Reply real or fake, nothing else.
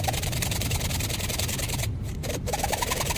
fake